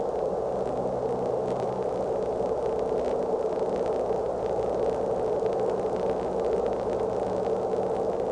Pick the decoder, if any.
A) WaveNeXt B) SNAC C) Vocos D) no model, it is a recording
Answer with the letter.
D